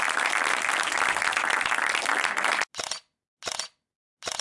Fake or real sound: real